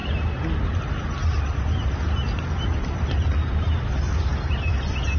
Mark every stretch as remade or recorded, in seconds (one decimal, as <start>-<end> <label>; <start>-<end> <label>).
0.0-5.2 recorded